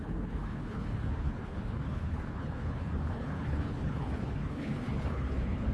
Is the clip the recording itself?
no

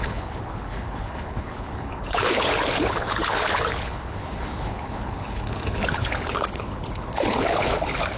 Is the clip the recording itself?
no